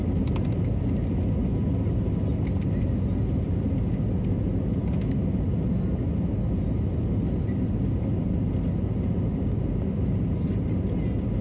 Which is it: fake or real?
real